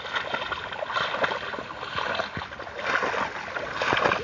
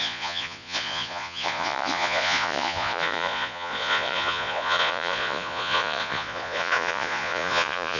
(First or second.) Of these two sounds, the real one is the first